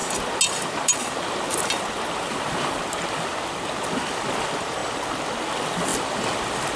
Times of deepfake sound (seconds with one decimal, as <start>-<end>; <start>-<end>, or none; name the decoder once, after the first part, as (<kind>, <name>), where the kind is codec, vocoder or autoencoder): none